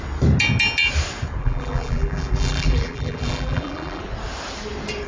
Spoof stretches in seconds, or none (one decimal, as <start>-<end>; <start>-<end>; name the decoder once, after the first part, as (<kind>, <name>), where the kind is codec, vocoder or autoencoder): 1.4-4.0 (vocoder, BigVGAN v2)